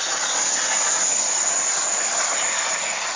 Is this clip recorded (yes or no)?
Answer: yes